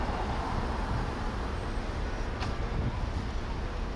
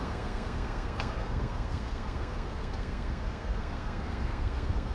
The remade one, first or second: second